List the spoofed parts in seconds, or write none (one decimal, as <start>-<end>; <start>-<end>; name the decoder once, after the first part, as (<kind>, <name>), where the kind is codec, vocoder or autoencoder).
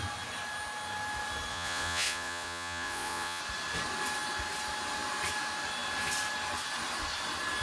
1.5-3.4 (vocoder, Vocos)